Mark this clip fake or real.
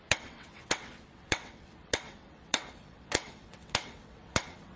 fake